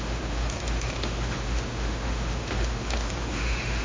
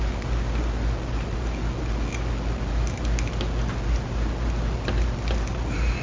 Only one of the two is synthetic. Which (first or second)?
first